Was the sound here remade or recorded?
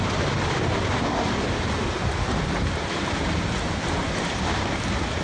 recorded